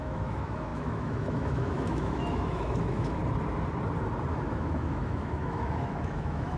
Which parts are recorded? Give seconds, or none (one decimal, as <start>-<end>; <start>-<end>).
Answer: 3.2-4.3

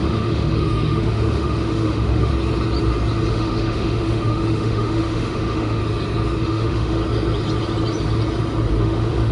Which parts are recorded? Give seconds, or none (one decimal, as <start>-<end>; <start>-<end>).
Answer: 2.3-3.3; 5.8-6.4; 7.0-8.8

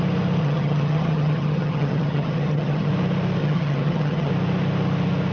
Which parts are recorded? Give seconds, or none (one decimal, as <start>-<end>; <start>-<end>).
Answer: 0.0-0.4; 2.9-3.4; 4.3-5.3

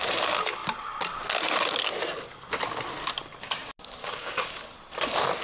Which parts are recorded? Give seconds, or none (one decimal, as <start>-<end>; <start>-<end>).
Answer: 0.0-4.0; 4.6-5.4

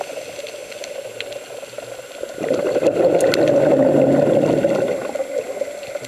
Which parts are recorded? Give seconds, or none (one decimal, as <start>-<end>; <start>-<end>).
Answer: 0.0-6.1

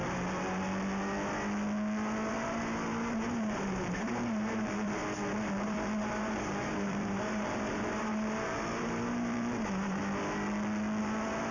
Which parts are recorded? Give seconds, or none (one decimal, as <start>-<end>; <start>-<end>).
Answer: 0.0-2.3; 5.0-5.6; 10.0-11.0

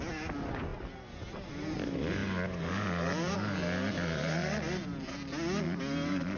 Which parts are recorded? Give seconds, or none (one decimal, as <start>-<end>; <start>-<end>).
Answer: 0.0-6.4